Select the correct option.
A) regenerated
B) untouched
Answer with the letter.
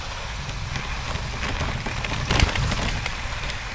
B